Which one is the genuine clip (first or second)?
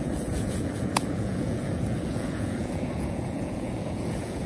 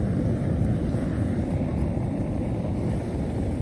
second